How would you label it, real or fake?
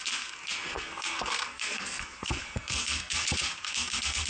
fake